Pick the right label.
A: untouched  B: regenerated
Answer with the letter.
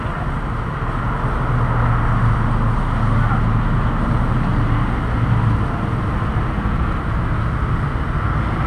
A